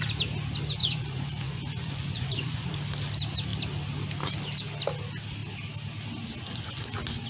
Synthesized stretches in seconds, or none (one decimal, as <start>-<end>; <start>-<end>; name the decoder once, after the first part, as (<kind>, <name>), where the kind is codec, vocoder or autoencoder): 0.8-2.7 (vocoder, Vocos)